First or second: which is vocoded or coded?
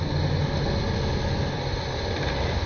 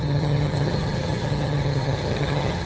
second